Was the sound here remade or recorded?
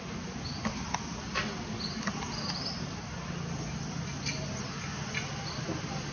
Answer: recorded